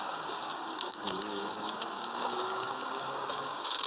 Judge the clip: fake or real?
fake